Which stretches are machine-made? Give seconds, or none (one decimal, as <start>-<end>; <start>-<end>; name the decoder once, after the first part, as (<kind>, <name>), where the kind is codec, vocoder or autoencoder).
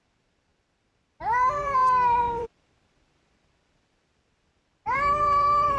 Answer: 0.0-5.8 (vocoder, BigVGAN v2)